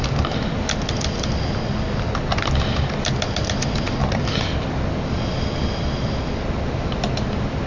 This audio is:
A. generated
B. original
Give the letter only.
B